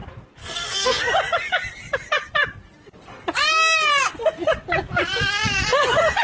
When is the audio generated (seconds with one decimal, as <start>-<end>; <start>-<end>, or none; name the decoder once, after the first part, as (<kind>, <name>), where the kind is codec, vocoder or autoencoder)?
0.4-1.0 (codec, SNAC)